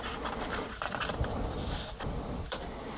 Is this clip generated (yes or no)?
yes